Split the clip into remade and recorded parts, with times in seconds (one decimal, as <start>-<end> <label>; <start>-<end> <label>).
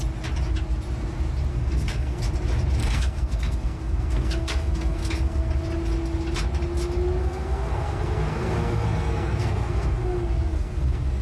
0.0-1.5 recorded; 1.5-2.2 remade; 2.2-2.8 recorded; 2.8-5.5 remade; 5.5-7.2 recorded; 7.2-11.2 remade